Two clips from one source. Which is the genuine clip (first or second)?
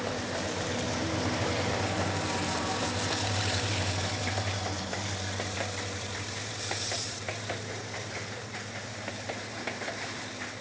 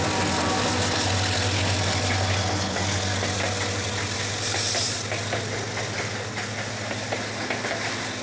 second